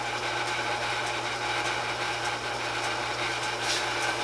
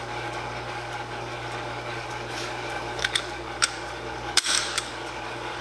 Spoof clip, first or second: second